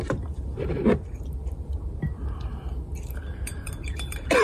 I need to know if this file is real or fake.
fake